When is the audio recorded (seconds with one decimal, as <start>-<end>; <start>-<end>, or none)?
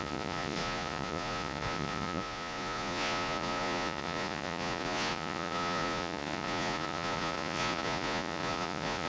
none